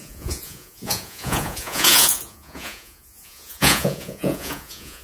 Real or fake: fake